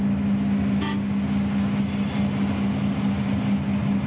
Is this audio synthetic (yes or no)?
no